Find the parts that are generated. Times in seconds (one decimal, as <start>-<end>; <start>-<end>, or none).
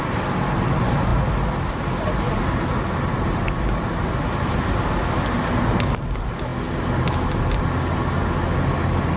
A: none